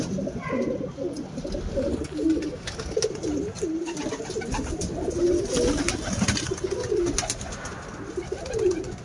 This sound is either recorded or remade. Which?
recorded